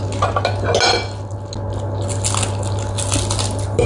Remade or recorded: recorded